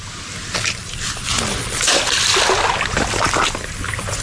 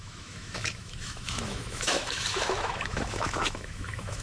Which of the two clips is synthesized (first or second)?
second